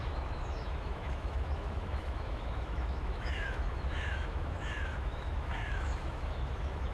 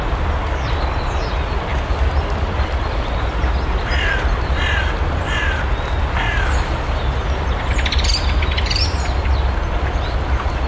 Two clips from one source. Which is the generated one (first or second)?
first